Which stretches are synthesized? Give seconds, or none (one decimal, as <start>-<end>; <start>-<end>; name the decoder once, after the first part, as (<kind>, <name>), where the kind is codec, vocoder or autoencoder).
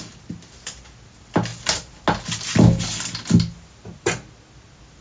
none